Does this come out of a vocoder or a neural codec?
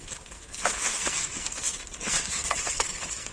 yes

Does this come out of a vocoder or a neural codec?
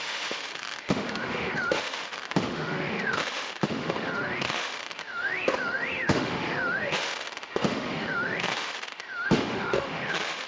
yes